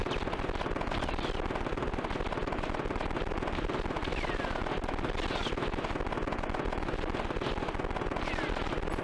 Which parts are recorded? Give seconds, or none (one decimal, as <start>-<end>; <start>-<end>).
0.0-9.0